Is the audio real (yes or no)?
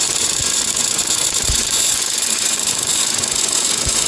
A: no